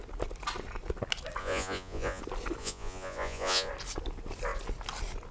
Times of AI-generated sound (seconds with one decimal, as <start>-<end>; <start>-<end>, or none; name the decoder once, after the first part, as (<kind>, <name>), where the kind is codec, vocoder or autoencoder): 1.4-2.2 (vocoder, Vocos); 2.6-3.7